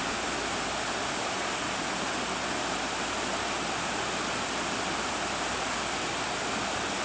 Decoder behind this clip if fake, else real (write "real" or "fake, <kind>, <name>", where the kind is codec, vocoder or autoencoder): real